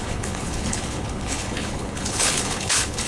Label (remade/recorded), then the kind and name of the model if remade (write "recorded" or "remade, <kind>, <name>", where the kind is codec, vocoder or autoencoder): remade, codec, HILCodec